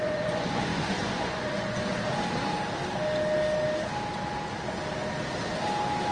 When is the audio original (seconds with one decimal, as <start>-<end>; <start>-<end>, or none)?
2.0-6.1

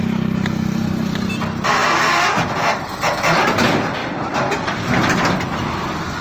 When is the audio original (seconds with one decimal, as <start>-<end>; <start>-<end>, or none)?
0.0-4.0; 5.8-6.2

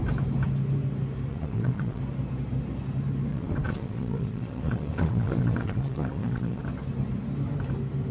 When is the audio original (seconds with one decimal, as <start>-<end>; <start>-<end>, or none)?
0.0-1.3; 2.0-3.3; 6.6-8.1

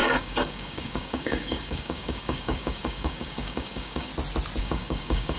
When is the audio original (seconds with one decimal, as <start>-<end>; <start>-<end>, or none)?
4.1-4.6

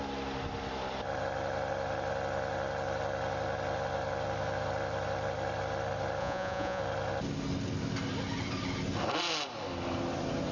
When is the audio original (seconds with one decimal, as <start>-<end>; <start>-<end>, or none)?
0.0-6.2; 6.8-10.5

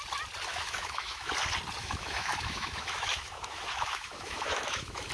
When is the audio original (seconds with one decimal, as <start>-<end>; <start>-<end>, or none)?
0.0-0.5; 1.3-1.8

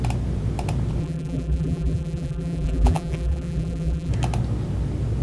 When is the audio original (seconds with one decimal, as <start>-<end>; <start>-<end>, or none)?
0.0-1.0; 4.1-5.2

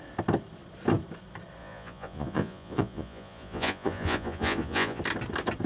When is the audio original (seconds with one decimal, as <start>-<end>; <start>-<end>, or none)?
0.0-1.6; 5.0-5.7